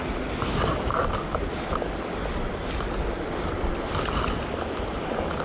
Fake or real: real